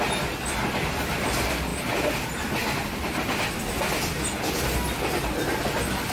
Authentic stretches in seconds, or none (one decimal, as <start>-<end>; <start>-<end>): 0.0-6.1